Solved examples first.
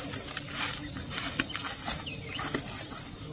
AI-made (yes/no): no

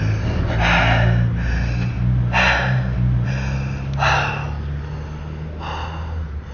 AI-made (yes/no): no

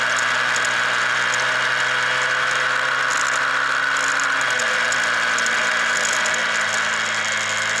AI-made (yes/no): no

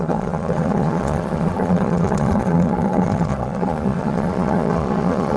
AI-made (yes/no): yes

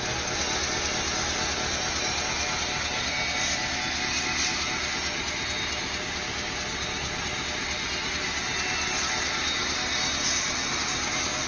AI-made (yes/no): no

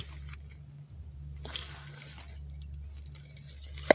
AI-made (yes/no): no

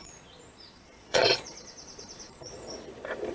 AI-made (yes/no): yes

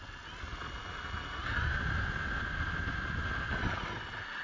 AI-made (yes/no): no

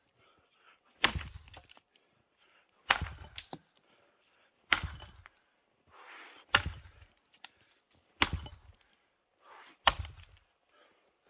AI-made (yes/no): no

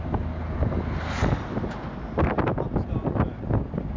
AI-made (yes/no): no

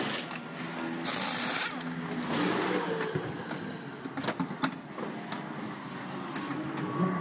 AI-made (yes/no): no